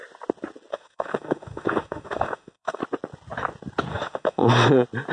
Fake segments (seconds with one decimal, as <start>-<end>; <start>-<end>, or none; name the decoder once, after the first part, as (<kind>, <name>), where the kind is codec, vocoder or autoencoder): 0.7-2.8 (autoencoder, DAC-VAE); 3.9-4.5